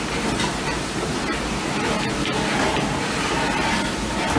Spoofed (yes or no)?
no